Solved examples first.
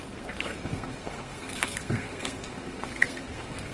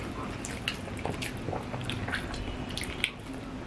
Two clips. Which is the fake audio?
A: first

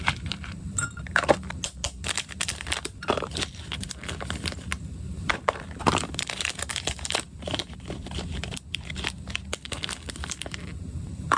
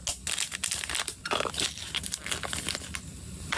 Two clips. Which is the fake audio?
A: first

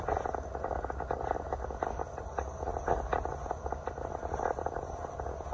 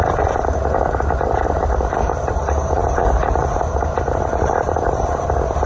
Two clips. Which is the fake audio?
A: second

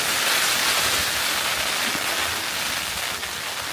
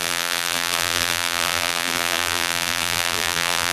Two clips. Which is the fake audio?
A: second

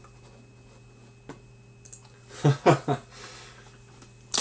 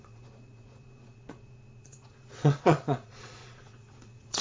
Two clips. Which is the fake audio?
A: second